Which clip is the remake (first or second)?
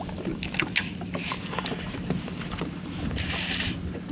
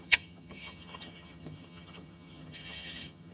second